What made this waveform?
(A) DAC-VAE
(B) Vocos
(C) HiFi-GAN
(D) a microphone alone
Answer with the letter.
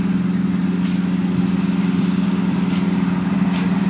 D